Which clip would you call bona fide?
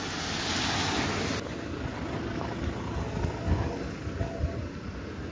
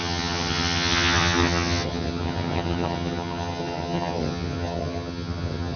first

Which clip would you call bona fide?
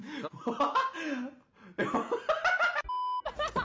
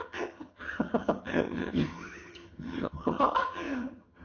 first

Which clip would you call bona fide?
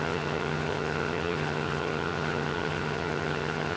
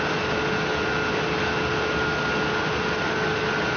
second